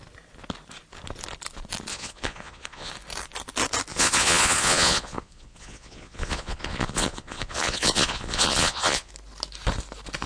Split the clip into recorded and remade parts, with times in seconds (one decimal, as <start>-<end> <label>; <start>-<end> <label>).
0.0-1.9 recorded; 1.9-2.9 remade; 2.9-3.9 recorded; 3.9-9.1 remade; 9.1-10.3 recorded